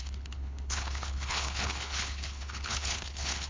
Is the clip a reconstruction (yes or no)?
yes